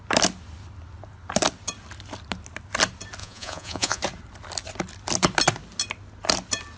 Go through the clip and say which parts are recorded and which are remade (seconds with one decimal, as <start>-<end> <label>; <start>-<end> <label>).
0.0-3.2 recorded; 3.2-4.0 remade; 4.0-6.8 recorded

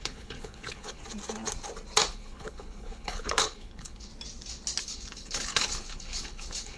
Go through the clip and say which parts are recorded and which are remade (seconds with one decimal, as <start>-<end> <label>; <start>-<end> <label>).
0.0-1.0 remade; 1.0-2.1 recorded; 2.1-4.1 remade; 4.1-4.8 recorded; 4.8-6.8 remade

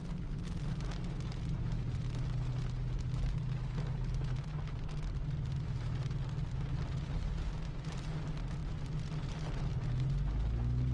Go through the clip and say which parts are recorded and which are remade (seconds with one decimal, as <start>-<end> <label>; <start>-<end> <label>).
0.0-8.6 recorded; 8.6-9.6 remade; 9.6-10.9 recorded

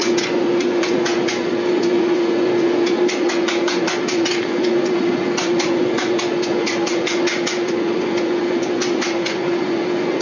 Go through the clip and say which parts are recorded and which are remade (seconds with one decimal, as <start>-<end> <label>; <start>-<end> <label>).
0.0-10.2 remade

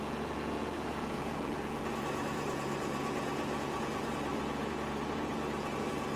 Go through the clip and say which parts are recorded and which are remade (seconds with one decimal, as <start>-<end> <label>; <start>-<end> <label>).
0.0-6.2 remade

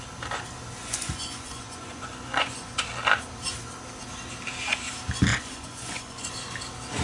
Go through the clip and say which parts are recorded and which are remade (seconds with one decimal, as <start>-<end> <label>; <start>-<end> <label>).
0.0-0.8 recorded; 0.8-2.8 remade; 2.8-5.3 recorded; 5.3-6.3 remade; 6.3-7.0 recorded

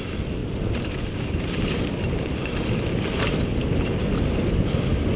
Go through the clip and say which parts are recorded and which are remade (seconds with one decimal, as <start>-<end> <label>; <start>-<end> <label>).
0.0-0.4 recorded; 0.4-0.9 remade; 0.9-5.2 recorded